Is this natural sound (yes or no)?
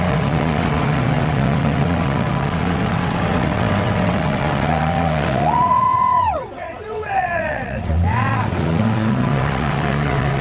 no